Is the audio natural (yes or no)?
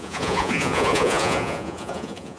no